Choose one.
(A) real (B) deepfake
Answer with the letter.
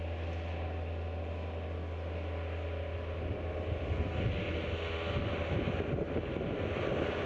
A